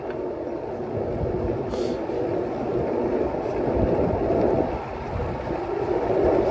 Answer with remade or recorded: recorded